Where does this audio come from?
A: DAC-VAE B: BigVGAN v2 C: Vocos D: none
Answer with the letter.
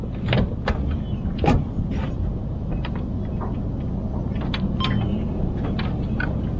D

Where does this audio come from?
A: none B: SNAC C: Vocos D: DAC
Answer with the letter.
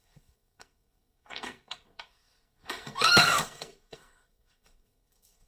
B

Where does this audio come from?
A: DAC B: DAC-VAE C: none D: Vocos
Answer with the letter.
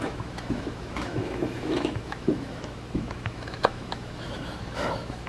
B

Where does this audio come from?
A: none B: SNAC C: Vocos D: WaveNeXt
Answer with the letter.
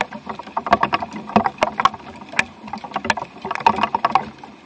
A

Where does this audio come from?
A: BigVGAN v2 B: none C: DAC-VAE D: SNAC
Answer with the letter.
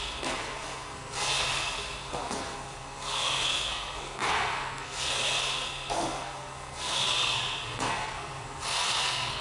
D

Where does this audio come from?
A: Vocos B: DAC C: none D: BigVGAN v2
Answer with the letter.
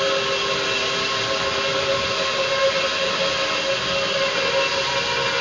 C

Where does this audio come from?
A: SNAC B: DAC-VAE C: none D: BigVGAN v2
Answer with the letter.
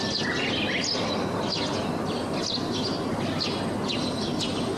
C